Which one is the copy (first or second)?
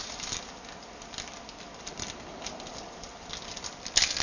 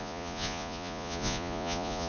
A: second